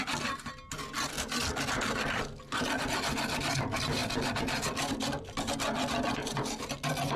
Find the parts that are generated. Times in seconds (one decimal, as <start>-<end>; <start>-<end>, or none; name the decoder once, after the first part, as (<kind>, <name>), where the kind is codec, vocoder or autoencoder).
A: none